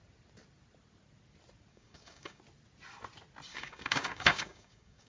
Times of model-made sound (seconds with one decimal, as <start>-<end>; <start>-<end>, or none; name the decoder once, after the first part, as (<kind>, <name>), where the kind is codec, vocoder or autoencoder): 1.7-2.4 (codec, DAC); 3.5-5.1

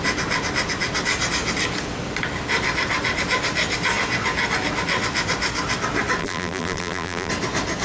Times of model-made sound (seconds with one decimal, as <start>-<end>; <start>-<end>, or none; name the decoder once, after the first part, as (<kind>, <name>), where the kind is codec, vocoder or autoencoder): 6.2-7.3 (vocoder, BigVGAN v2)

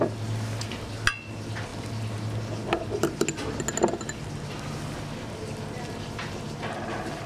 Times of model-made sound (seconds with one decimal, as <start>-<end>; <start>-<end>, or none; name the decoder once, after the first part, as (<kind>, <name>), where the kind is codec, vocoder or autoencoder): none

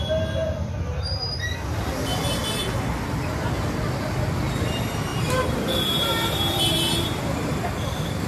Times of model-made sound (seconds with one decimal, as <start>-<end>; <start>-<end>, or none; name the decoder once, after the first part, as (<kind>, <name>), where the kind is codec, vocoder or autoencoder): 0.9-1.6 (vocoder, BigVGAN v2); 5.1-8.3